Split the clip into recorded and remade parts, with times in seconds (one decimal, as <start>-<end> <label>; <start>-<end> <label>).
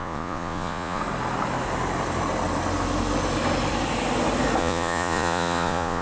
0.0-1.0 remade; 1.0-4.6 recorded; 4.6-6.0 remade